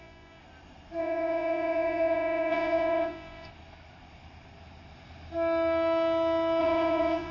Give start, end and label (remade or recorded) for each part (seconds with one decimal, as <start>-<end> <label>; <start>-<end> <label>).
0.0-0.4 remade; 0.4-1.0 recorded; 1.0-3.5 remade; 3.5-6.6 recorded; 6.6-7.3 remade